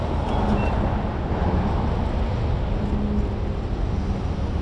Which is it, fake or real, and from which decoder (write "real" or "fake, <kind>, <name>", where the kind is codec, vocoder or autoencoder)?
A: real